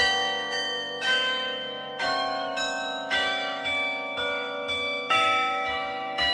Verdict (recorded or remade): remade